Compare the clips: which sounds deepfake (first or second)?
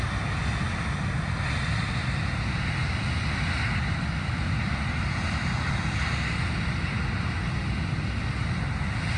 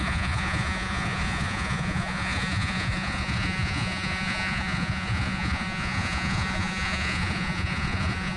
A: second